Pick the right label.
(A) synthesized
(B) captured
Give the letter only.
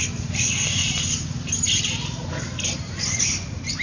B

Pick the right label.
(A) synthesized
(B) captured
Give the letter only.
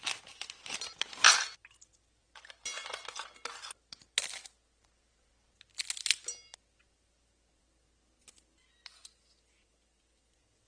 B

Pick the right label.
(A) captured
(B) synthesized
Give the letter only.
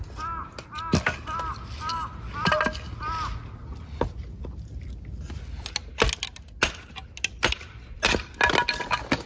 A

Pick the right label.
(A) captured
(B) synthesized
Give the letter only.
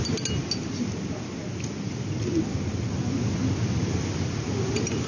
A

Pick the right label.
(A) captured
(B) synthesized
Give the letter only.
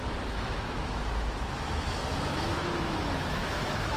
B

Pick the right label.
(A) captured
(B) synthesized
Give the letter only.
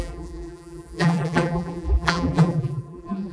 B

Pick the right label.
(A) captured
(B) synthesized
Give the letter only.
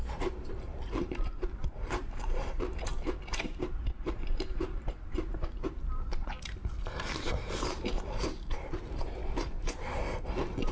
B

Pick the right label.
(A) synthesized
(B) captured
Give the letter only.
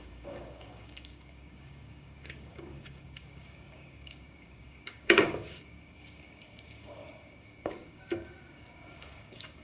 A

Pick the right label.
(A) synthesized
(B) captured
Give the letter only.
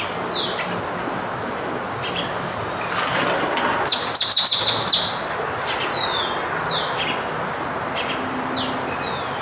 B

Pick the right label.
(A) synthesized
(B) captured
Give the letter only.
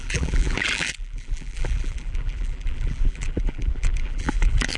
A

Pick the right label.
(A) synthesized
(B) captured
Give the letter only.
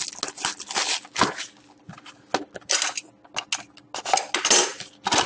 B